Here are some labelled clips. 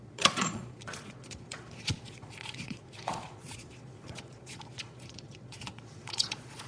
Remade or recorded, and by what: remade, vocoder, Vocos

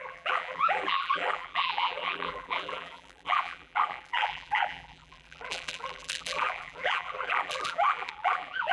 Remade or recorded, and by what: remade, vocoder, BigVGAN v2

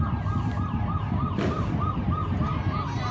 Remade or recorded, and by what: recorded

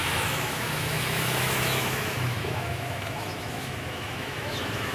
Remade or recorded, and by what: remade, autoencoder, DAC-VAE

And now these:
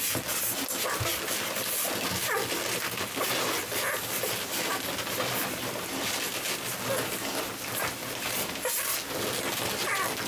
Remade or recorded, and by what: recorded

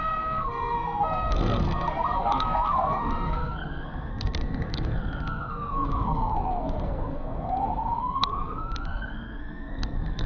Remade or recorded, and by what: remade, codec, SNAC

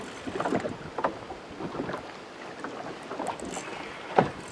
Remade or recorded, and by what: recorded